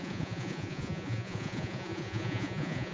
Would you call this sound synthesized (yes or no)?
yes